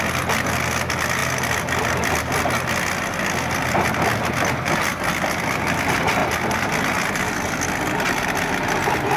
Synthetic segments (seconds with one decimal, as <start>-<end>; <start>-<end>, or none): 1.2-2.1